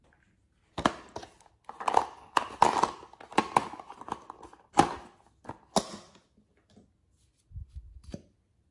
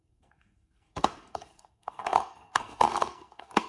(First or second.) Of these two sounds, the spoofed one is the second